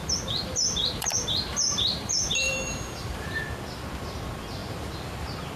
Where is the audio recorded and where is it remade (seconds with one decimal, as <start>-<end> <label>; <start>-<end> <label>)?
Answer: 0.0-3.4 remade; 3.4-5.6 recorded